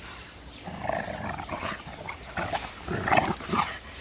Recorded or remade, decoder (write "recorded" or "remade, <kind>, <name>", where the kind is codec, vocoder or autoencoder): remade, vocoder, BigVGAN v2